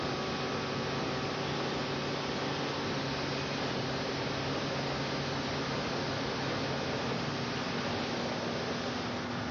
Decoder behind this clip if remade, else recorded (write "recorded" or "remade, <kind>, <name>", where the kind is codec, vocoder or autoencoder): recorded